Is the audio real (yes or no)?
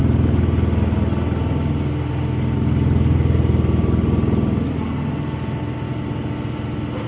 yes